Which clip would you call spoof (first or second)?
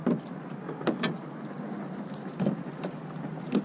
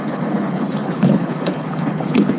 second